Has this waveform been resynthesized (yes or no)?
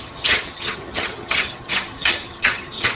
yes